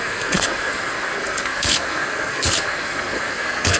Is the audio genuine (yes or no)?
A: no